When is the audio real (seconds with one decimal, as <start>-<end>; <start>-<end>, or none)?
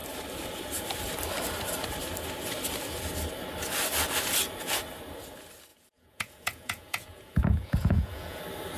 0.0-5.7; 8.4-8.8